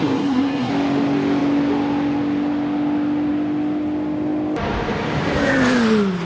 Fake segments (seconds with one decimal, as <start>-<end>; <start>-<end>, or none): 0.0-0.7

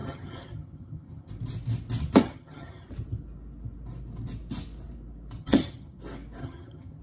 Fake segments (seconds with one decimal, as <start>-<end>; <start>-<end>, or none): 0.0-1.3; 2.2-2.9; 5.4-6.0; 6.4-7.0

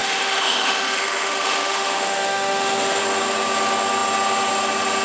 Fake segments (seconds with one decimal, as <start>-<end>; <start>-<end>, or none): 0.0-3.0

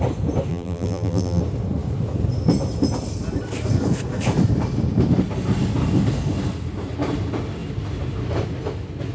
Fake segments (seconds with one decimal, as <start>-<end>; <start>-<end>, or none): 0.5-1.4